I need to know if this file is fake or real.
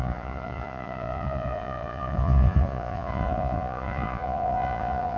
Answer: fake